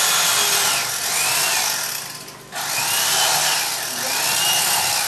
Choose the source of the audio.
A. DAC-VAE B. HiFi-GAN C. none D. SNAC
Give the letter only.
C